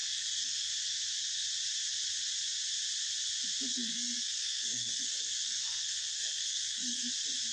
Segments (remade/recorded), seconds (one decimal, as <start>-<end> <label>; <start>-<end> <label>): 0.0-0.7 remade; 0.7-3.7 recorded; 3.7-7.1 remade; 7.1-7.5 recorded

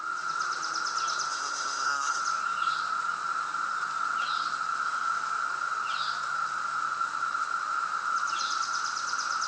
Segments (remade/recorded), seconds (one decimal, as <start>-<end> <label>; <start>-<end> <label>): 0.0-1.3 recorded; 1.3-2.2 remade; 2.2-9.5 recorded

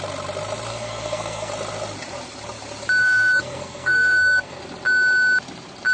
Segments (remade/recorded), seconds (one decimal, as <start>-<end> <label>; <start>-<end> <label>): 0.0-0.7 recorded; 0.7-1.5 remade; 1.5-3.0 recorded; 3.0-4.6 remade; 4.6-5.9 recorded

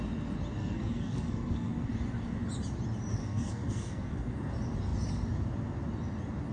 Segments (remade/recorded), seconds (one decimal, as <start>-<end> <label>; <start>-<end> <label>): 0.0-0.6 recorded; 0.6-1.9 remade; 1.9-3.2 recorded; 3.2-4.4 remade; 4.4-6.5 recorded

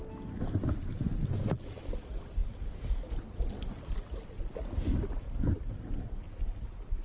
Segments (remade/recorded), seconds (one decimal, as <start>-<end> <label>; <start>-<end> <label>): 0.0-7.0 recorded

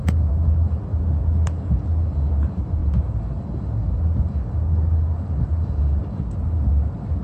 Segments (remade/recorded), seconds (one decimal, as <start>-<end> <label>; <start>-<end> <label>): 0.0-7.2 recorded

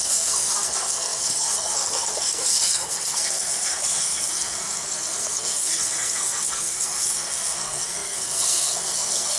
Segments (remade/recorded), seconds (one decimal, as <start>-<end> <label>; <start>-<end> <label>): 0.0-9.4 remade

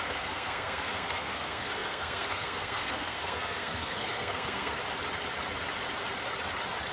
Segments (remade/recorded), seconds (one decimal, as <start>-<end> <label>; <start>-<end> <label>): 0.0-4.8 remade; 4.8-6.9 recorded